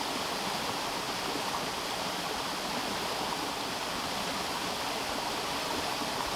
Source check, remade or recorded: recorded